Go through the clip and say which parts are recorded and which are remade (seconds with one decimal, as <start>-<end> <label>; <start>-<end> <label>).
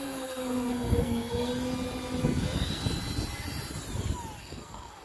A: 0.0-1.5 remade; 1.5-2.2 recorded; 2.2-2.8 remade; 2.8-4.4 recorded; 4.4-5.0 remade